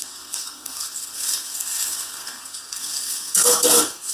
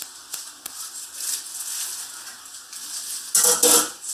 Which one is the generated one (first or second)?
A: first